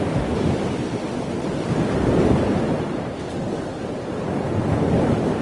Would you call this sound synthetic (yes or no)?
no